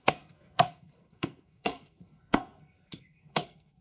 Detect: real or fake fake